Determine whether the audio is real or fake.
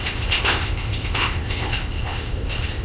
fake